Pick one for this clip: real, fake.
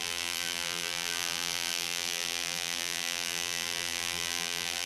fake